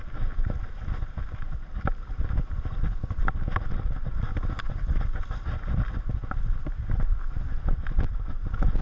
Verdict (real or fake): real